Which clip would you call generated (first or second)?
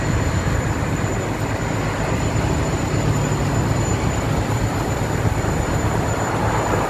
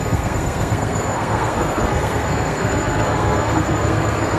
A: second